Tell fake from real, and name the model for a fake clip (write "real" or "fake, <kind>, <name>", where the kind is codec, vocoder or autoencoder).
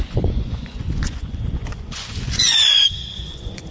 fake, vocoder, Vocos